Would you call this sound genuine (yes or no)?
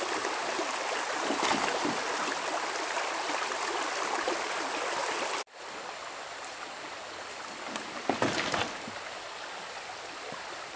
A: yes